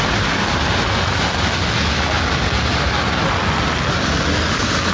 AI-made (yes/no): no